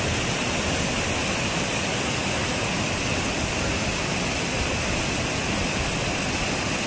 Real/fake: real